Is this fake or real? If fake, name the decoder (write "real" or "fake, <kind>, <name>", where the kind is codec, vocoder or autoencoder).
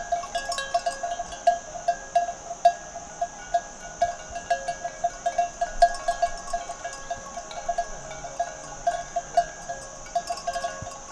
real